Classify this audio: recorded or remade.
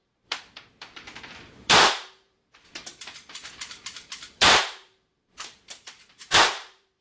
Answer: remade